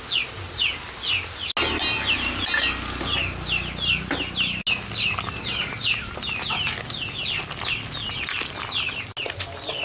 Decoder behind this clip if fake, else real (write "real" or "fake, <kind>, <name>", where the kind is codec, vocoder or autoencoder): real